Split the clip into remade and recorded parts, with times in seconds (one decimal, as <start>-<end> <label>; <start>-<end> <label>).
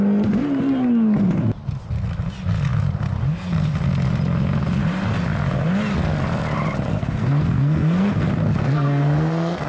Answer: 0.0-6.9 recorded; 6.9-9.7 remade